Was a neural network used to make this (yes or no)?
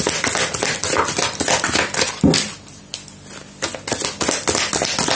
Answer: no